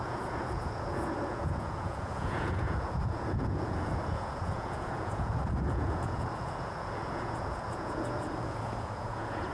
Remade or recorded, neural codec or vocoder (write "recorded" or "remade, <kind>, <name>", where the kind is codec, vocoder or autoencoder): remade, vocoder, Vocos